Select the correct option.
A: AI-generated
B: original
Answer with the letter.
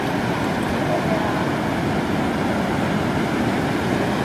B